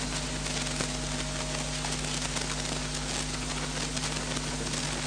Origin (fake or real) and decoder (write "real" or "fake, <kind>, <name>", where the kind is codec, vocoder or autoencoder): real